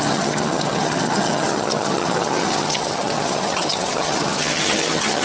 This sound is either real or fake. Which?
fake